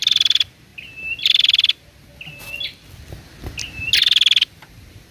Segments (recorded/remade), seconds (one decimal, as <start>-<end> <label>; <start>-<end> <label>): 0.0-5.1 recorded